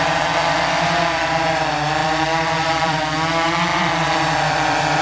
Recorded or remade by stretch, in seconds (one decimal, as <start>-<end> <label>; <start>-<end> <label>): 0.0-2.0 recorded; 2.0-3.0 remade; 3.0-3.7 recorded; 3.7-5.0 remade